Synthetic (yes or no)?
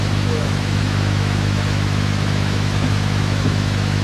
yes